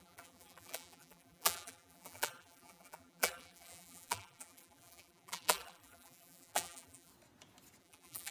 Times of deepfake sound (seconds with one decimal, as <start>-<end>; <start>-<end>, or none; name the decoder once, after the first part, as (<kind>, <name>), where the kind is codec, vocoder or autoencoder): 0.0-7.1 (vocoder, BigVGAN v2); 7.8-8.3